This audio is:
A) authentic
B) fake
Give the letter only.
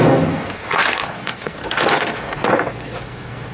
B